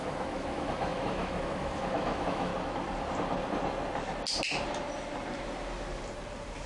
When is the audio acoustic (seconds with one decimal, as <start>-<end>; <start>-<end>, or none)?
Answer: 2.5-6.7